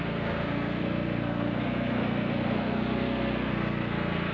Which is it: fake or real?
fake